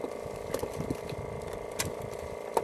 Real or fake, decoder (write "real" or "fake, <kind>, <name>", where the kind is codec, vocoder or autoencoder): real